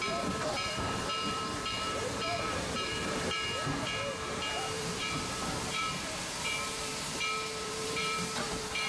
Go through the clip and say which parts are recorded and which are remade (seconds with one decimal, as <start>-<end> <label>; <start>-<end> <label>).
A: 0.0-6.9 remade; 6.9-7.6 recorded; 7.6-8.9 remade